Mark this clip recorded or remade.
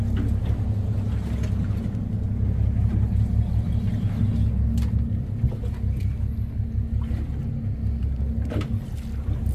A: recorded